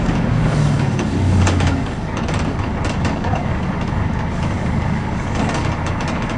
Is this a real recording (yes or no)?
no